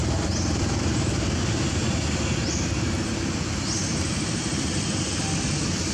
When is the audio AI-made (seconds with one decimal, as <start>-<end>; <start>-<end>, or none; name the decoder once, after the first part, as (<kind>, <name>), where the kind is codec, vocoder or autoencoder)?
0.0-0.9 (vocoder, BigVGAN v2)